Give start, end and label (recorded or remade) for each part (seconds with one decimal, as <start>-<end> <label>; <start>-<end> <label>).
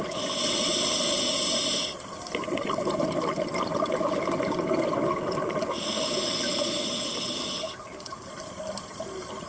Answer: 0.0-9.5 recorded